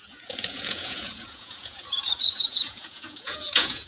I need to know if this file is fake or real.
fake